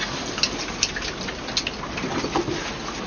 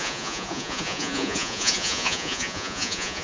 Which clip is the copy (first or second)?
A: second